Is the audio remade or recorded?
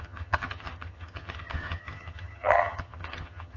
remade